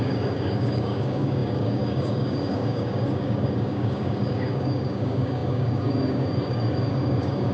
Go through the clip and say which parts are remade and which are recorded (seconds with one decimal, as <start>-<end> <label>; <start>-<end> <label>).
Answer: 0.0-7.5 remade